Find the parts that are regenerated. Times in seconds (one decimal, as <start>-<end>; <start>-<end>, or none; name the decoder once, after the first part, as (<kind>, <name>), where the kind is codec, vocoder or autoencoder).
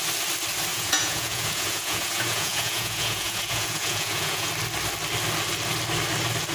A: 0.7-4.5 (vocoder, Vocos)